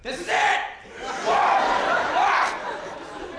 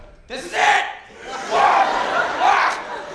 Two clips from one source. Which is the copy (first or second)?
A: first